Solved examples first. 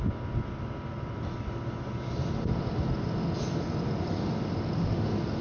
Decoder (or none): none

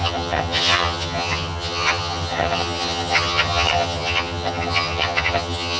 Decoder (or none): vocoder, HiFi-GAN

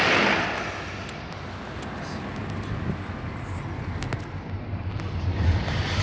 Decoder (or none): none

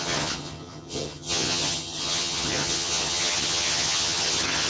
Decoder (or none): vocoder, HiFi-GAN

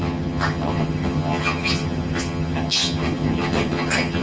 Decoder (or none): vocoder, HiFi-GAN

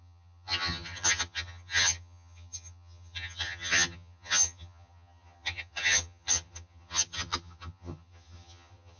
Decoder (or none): vocoder, HiFi-GAN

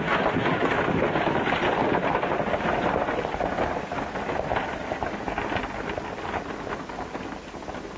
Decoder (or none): none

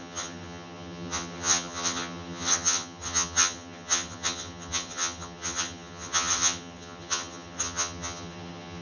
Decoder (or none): vocoder, HiFi-GAN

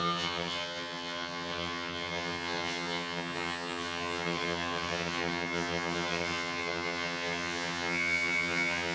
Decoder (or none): vocoder, HiFi-GAN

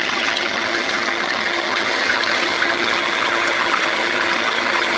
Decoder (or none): vocoder, HiFi-GAN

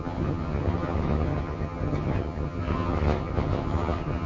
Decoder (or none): vocoder, HiFi-GAN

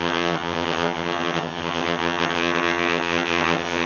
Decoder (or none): vocoder, HiFi-GAN